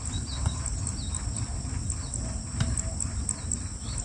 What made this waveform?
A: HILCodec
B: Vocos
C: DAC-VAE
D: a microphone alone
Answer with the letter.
D